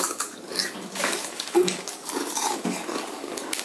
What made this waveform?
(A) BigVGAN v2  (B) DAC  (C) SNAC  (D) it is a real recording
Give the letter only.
B